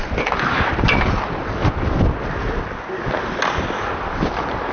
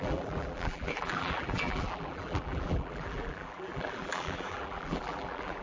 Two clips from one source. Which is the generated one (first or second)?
second